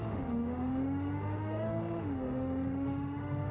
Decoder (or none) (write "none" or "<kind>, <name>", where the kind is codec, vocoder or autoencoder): autoencoder, DAC-VAE